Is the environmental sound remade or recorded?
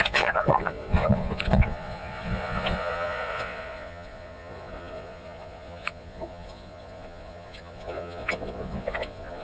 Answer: remade